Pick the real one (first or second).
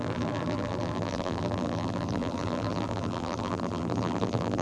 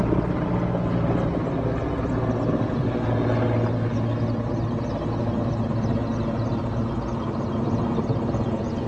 second